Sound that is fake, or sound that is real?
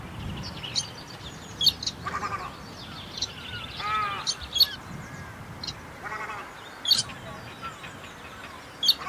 real